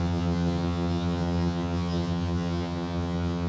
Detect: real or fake fake